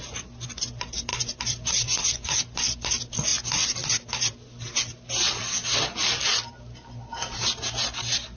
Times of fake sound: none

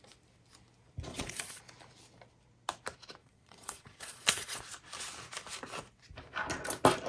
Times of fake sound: 1.1-1.6 (vocoder, Vocos); 3.2-4.6

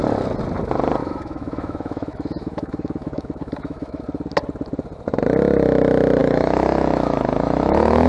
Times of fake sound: 1.0-4.0 (autoencoder, DAC-VAE); 6.2-8.1

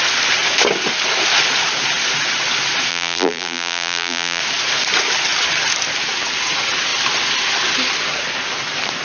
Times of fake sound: 2.9-4.4 (vocoder, BigVGAN v2)

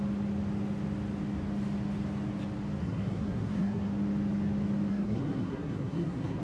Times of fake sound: 2.8-3.9 (codec, SNAC); 4.9-6.4